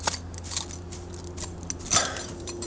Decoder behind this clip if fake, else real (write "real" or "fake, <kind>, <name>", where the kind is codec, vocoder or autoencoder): real